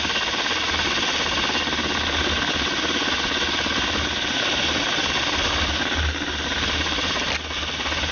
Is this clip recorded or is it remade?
recorded